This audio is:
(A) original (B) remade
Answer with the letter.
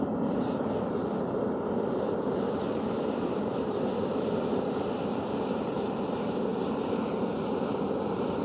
A